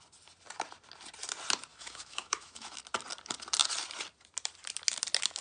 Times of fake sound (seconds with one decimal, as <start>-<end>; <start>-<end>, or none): 1.7-2.8

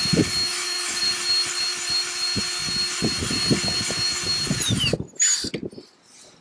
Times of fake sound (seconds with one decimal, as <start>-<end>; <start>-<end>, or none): 0.4-1.0

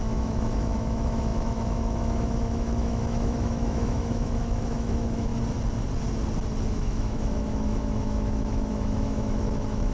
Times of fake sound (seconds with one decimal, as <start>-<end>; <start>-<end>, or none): 0.0-5.3; 6.7-9.9

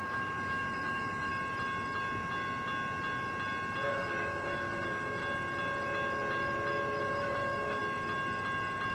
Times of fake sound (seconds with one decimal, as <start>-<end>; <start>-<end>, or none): 0.0-1.3; 3.9-5.2; 7.0-7.8

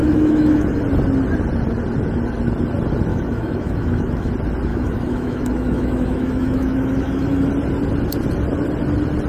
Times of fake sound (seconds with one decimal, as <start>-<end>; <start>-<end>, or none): 0.0-0.8; 3.1-4.3; 4.7-7.5

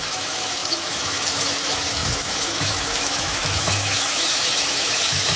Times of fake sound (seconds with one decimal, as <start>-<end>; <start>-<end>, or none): 0.0-5.4

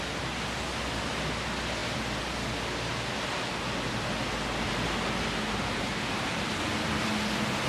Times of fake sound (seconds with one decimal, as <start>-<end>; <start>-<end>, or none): none